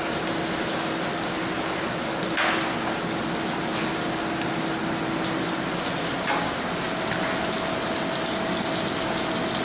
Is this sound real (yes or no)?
yes